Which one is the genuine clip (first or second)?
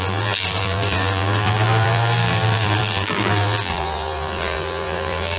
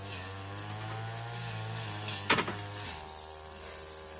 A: second